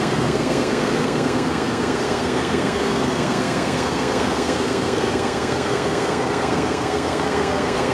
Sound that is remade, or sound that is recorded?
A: remade